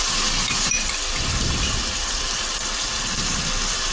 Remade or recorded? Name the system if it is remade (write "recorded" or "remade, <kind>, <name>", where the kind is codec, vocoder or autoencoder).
recorded